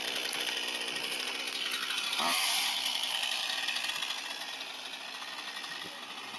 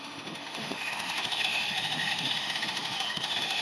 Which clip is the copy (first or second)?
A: second